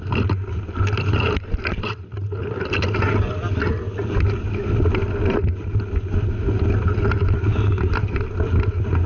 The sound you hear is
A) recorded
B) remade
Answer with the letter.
A